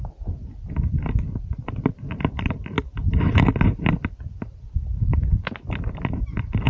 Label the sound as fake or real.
real